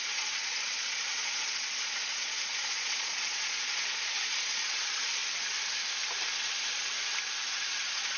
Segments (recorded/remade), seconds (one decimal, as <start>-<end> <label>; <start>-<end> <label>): 0.0-5.2 remade; 5.2-7.5 recorded; 7.5-8.2 remade